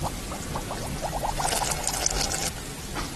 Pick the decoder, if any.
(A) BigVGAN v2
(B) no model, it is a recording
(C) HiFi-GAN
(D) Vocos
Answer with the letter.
B